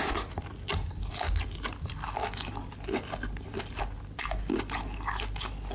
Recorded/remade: recorded